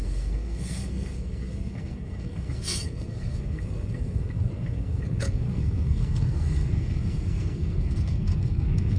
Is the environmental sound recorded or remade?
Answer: remade